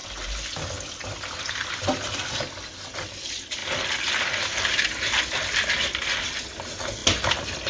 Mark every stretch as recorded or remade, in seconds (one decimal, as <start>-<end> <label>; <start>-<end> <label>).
0.0-3.6 remade; 3.6-4.4 recorded; 4.4-7.0 remade; 7.0-7.7 recorded